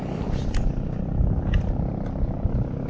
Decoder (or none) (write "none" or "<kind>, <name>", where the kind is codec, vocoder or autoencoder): none